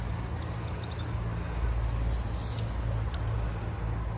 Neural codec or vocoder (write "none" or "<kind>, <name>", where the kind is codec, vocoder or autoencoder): none